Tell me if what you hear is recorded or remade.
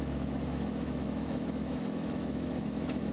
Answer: remade